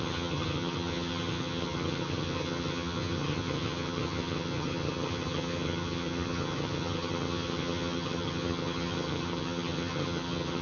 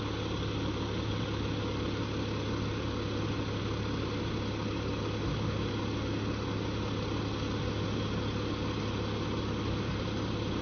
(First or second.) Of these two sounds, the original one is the second